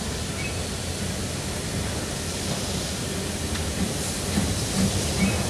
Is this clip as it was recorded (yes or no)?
yes